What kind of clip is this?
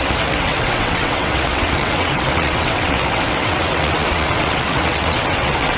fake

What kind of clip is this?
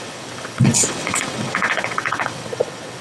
fake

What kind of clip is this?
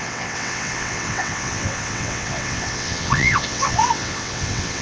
fake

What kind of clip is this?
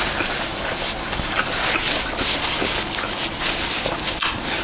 real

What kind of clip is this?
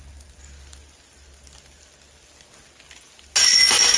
real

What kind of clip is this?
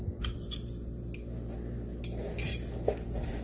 real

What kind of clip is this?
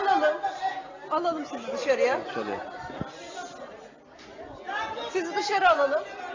real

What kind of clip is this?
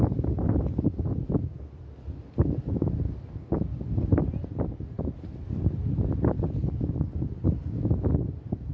real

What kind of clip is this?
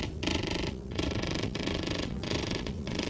fake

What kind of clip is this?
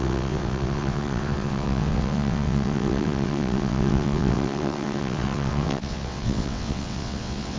fake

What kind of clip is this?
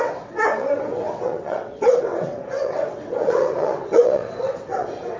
fake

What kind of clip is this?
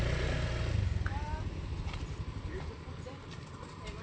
real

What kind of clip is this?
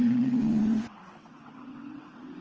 fake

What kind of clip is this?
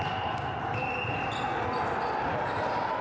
real